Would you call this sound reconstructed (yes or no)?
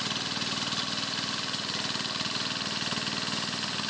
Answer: no